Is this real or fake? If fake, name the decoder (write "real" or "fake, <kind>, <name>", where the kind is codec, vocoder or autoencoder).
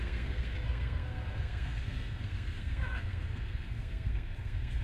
fake, codec, SNAC